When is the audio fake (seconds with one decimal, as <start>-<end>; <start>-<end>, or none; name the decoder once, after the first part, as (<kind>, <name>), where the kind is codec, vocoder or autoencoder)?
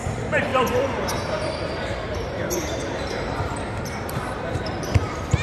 0.0-5.4 (vocoder, BigVGAN v2)